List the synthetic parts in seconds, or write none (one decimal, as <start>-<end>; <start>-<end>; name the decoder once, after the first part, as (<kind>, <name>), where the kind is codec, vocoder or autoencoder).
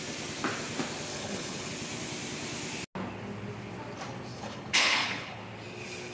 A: 1.1-1.7 (codec, HILCodec); 4.3-5.4